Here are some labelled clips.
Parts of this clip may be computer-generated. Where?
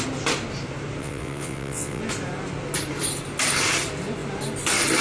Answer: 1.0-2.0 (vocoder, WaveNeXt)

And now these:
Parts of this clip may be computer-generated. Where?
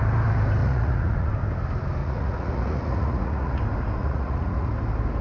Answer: 0.6-1.3 (vocoder, Vocos); 2.0-3.6; 4.0-4.7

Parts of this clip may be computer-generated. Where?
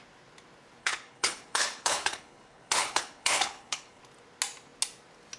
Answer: 0.8-4.0 (codec, HILCodec)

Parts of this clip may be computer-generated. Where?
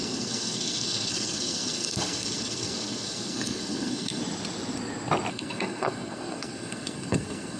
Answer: 0.0-4.2 (codec, SNAC); 5.3-7.6